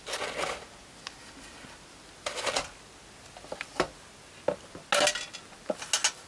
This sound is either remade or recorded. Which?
recorded